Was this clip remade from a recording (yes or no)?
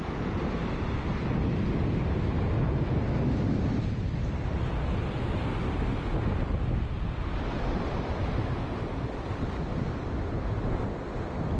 no